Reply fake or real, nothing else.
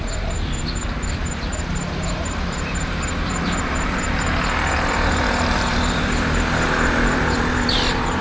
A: fake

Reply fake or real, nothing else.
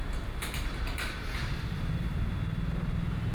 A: fake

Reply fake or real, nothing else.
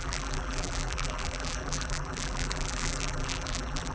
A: fake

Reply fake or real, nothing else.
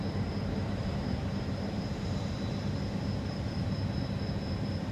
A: fake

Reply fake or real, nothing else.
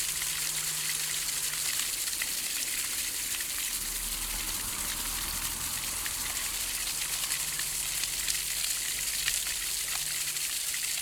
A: real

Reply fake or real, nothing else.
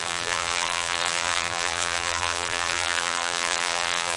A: fake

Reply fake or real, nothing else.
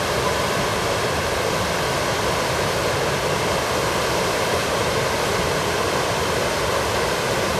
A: fake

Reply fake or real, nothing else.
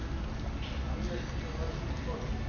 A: real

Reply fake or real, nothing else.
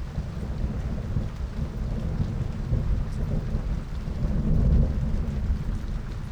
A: real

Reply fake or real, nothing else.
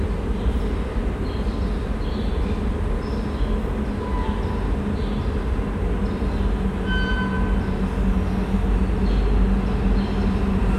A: real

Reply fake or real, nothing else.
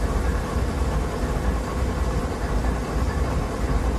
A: fake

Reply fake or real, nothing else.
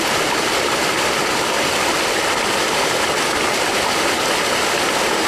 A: real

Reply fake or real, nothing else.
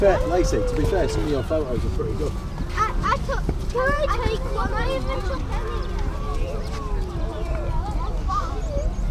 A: real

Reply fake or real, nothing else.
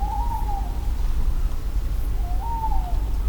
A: real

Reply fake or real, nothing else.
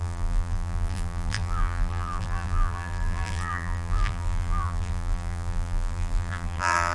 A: fake